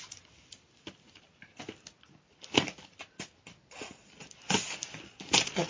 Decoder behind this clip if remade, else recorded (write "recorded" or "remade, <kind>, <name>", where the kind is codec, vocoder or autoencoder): recorded